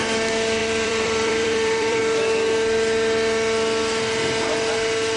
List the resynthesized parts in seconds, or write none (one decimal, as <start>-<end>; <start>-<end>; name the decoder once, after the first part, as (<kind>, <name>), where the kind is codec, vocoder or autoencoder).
0.6-2.0 (vocoder, BigVGAN v2)